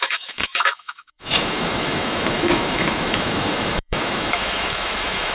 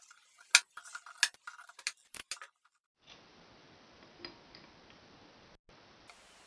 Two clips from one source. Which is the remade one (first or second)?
first